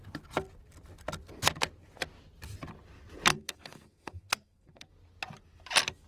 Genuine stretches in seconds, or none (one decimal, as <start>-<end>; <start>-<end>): 0.0-3.3; 4.9-6.1